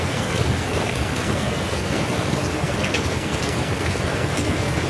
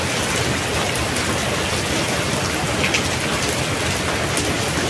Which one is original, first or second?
second